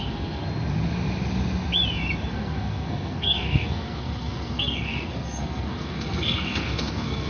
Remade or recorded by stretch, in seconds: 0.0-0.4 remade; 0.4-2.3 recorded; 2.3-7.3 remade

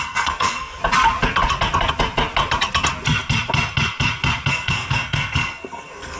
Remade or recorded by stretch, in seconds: 0.0-0.8 remade; 0.8-4.5 recorded; 4.5-6.2 remade

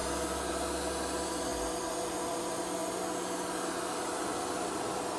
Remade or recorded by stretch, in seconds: 0.0-5.2 recorded

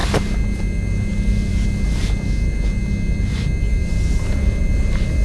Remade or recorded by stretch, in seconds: 0.0-5.2 recorded

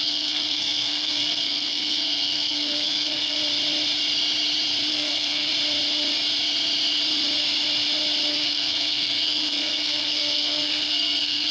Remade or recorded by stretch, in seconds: 0.0-3.4 remade; 3.4-4.9 recorded; 4.9-5.5 remade; 5.5-8.3 recorded; 8.3-11.5 remade

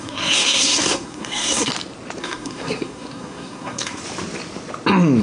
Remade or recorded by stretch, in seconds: 0.0-1.7 remade; 1.7-2.2 recorded; 2.2-4.0 remade; 4.0-5.2 recorded